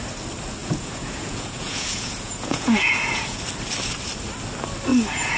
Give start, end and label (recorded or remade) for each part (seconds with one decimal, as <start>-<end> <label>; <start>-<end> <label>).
0.0-0.6 recorded; 0.6-3.4 remade; 3.4-4.9 recorded; 4.9-5.4 remade

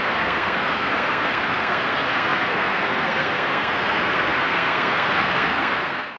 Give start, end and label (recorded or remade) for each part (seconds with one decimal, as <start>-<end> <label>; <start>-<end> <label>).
0.0-6.2 remade

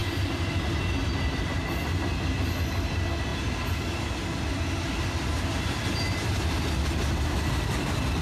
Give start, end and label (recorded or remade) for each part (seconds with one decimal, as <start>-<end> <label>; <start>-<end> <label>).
0.0-8.2 recorded

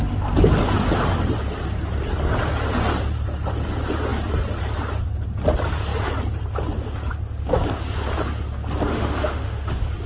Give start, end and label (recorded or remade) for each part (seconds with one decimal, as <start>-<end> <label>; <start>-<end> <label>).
0.0-8.9 recorded; 8.9-9.7 remade; 9.7-10.1 recorded

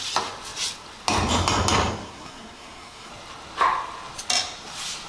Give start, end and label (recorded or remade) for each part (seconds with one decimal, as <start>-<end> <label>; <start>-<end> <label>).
0.0-2.0 recorded; 2.0-3.1 remade; 3.1-5.1 recorded

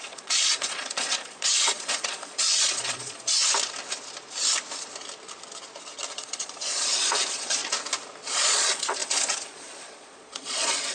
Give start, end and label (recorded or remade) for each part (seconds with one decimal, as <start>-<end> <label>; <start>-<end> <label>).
0.0-3.4 remade; 3.4-6.1 recorded; 6.1-7.6 remade; 7.6-8.4 recorded; 8.4-10.9 remade

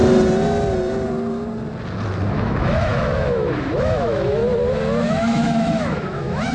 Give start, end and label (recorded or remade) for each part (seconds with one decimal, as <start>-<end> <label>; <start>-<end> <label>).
0.0-2.3 recorded; 2.3-4.4 remade; 4.4-5.0 recorded; 5.0-6.5 remade

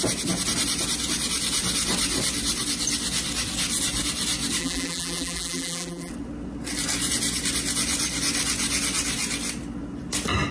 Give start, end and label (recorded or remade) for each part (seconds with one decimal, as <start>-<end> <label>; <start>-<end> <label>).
0.0-4.6 recorded; 4.6-6.1 remade; 6.1-10.5 recorded